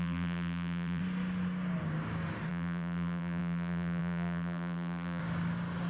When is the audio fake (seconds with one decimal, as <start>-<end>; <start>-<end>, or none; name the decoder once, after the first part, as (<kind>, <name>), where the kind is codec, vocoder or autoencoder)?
0.0-1.0 (vocoder, BigVGAN v2); 2.5-5.2